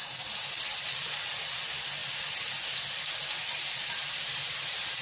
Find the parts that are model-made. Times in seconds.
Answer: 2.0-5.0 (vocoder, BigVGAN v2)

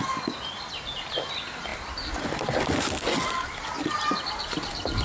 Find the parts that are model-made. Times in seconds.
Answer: none

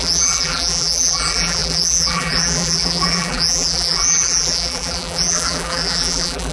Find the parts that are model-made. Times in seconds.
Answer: 0.0-6.5 (vocoder, BigVGAN v2)

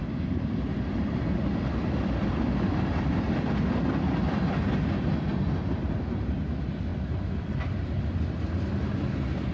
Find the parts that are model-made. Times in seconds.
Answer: 6.9-8.0 (vocoder, BigVGAN v2)